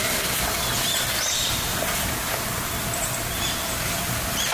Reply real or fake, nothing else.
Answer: real